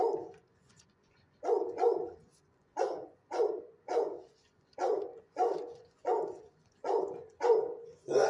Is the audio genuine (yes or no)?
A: no